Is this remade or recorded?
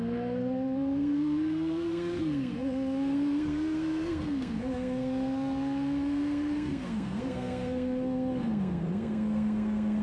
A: remade